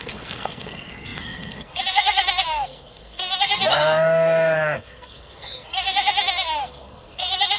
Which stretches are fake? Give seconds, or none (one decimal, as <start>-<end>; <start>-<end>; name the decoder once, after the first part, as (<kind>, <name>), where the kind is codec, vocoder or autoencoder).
0.0-7.6 (codec, SNAC)